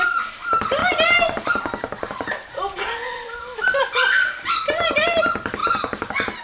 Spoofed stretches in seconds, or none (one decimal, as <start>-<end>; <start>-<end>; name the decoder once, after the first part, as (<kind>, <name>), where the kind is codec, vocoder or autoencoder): 0.0-5.6 (vocoder, BigVGAN v2)